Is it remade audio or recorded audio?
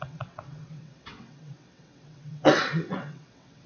remade